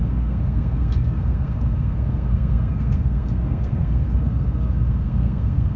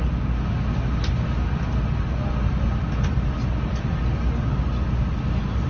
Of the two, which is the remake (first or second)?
first